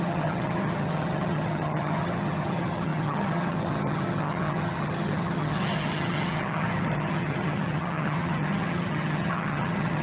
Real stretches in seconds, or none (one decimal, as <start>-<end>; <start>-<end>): none